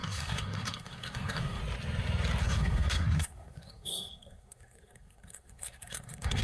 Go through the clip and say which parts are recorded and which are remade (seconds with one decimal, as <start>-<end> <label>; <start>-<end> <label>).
0.0-1.6 remade; 1.6-2.4 recorded; 2.4-6.4 remade